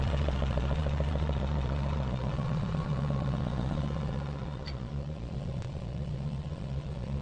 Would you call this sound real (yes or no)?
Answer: no